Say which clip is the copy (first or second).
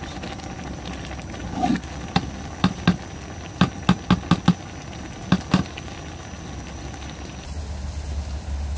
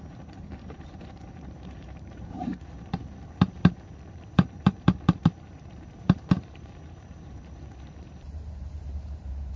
second